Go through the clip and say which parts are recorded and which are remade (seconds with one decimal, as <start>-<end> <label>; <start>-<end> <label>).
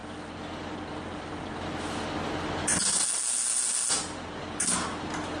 0.0-5.4 recorded